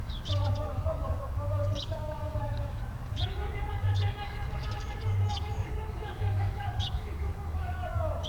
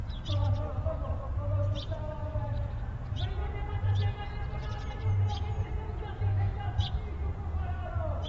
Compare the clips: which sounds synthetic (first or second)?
first